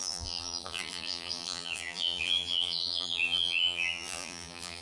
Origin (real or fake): fake